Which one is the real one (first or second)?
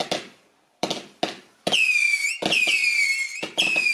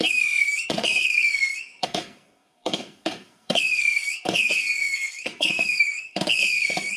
first